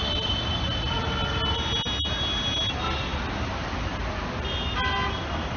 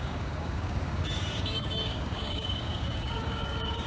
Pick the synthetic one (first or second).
second